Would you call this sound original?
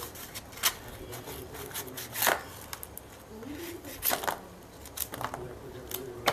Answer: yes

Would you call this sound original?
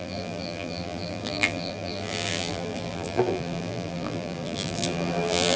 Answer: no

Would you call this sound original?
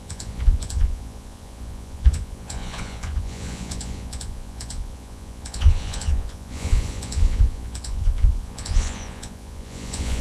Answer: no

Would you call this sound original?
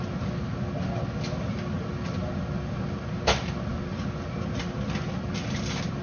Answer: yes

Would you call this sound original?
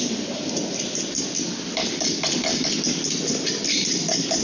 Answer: yes